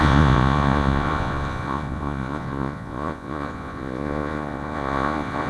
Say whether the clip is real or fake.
fake